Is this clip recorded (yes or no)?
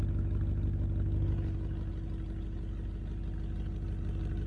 yes